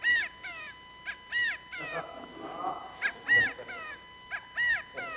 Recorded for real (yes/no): yes